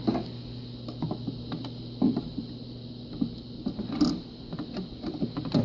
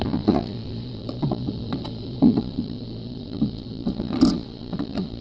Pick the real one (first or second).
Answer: first